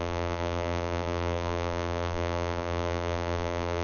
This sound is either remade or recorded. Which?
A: remade